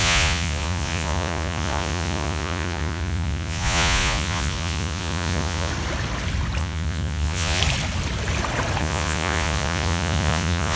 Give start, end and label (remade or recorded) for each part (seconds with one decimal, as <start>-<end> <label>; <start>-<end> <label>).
0.0-5.7 remade; 5.7-6.6 recorded; 6.6-7.6 remade; 7.6-8.8 recorded; 8.8-10.8 remade